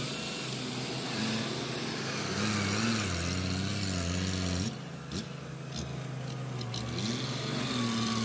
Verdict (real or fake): real